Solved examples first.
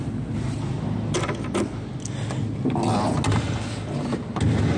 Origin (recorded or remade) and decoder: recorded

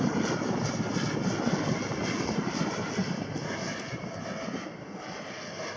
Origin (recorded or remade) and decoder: recorded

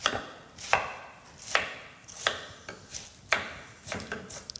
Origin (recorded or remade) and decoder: recorded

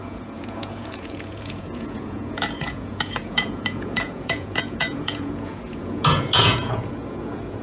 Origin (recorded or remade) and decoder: remade, vocoder, Vocos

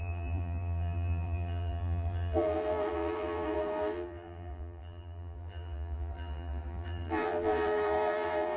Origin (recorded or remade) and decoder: remade, vocoder, BigVGAN v2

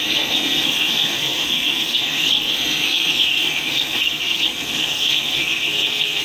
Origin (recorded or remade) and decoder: remade, codec, SNAC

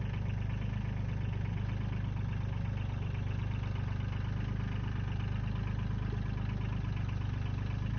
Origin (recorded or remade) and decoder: recorded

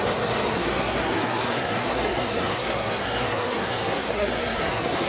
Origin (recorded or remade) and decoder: remade, codec, SNAC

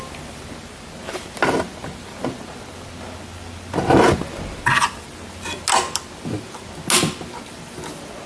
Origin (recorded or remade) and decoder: recorded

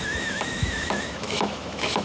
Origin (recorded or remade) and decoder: remade, autoencoder, DAC-VAE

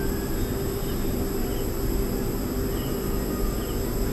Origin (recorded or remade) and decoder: recorded